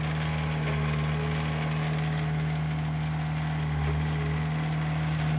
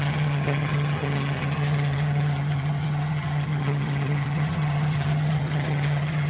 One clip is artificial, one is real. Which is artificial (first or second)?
second